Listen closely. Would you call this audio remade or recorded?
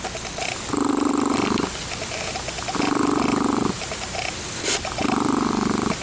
recorded